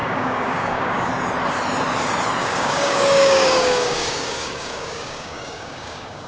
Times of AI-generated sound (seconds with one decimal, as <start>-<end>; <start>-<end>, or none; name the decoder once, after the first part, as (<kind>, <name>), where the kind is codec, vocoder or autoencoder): 0.0-1.1 (codec, DAC); 2.4-6.3